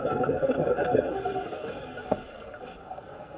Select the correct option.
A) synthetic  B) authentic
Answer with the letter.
A